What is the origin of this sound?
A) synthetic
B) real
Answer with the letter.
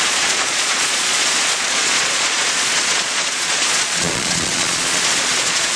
A